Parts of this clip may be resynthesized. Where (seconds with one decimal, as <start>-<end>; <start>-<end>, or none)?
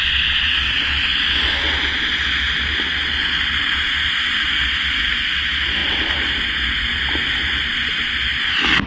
5.8-6.5